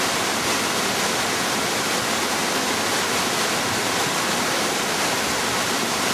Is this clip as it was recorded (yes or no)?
yes